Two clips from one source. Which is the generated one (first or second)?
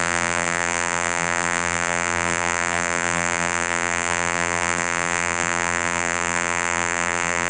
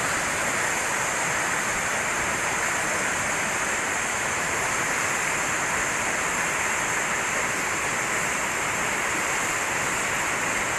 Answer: first